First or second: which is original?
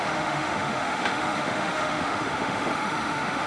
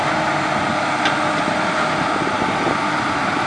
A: second